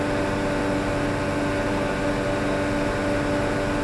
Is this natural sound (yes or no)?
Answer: yes